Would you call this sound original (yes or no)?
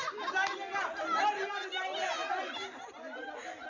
yes